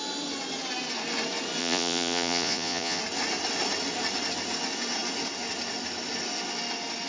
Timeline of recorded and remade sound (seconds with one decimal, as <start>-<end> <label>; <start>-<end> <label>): 0.0-1.6 recorded; 1.6-3.0 remade; 3.0-7.1 recorded